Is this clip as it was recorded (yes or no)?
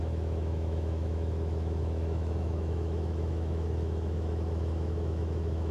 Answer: no